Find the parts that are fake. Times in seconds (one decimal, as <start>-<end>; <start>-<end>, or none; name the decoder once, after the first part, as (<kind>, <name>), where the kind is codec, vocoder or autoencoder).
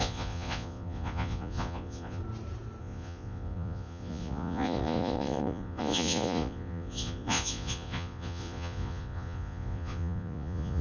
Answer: 0.0-2.2 (vocoder, Vocos); 2.8-10.8